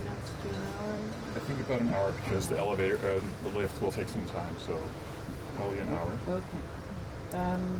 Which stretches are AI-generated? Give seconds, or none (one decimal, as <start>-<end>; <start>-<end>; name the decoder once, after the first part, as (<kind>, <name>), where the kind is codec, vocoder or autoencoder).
0.0-2.3 (vocoder, BigVGAN v2); 3.0-3.9